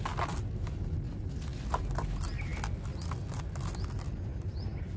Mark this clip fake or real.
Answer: real